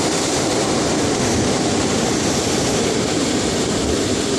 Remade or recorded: remade